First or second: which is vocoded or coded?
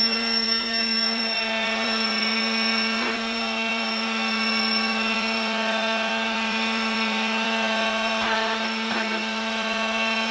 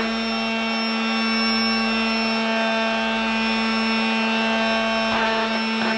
first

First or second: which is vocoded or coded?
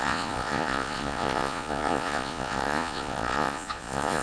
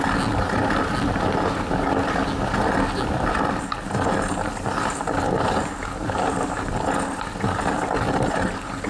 first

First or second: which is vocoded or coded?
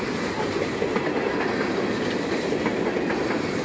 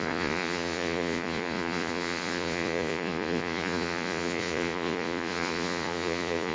second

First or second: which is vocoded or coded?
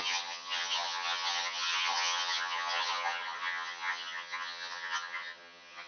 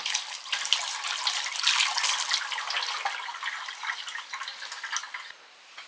first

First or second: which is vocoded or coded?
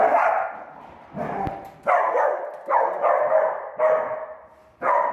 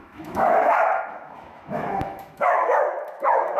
second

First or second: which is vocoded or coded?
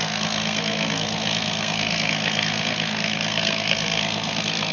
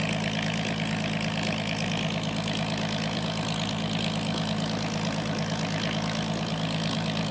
first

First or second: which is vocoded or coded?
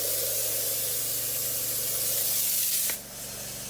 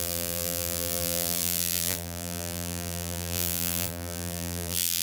second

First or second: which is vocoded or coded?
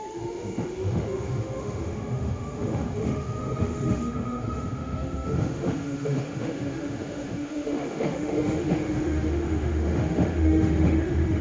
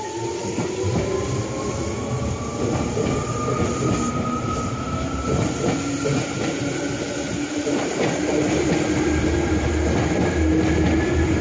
first